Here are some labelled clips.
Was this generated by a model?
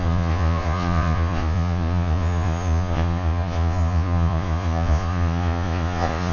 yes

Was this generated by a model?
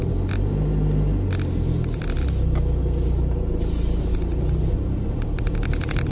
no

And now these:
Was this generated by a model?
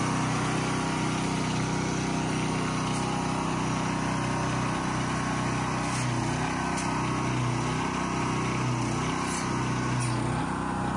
no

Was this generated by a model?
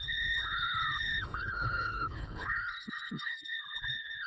yes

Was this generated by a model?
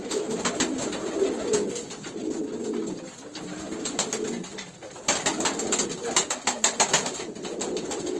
no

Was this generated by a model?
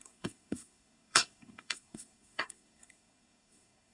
yes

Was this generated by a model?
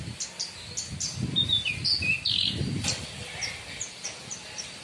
no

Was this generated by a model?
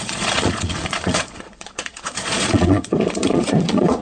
yes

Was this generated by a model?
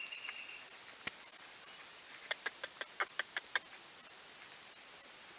no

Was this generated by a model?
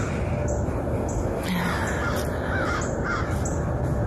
no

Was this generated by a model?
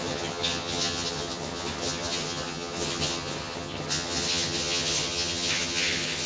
yes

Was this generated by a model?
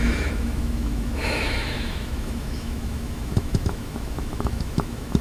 yes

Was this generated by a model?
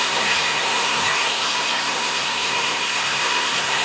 yes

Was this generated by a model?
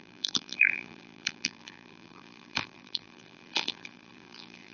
yes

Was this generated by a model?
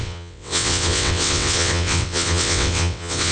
yes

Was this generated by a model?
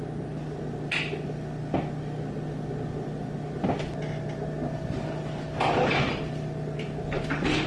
no